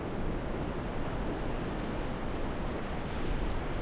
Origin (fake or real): real